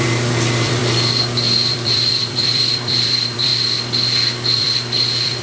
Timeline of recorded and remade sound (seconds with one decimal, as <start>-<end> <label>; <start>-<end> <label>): 0.0-0.8 remade; 0.8-1.7 recorded; 1.7-3.5 remade; 3.5-4.6 recorded; 4.6-5.4 remade